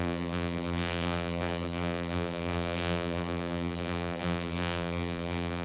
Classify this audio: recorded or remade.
remade